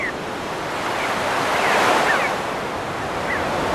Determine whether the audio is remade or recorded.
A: recorded